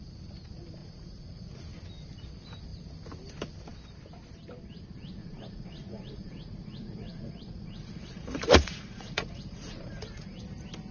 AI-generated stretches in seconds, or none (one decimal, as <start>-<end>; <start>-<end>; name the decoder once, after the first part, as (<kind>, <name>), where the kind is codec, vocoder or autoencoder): 0.8-1.6 (vocoder, Vocos); 5.2-10.4